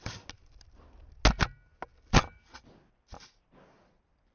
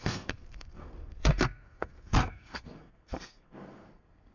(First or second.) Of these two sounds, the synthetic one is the second